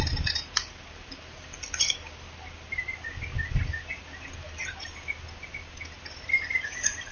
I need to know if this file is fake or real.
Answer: real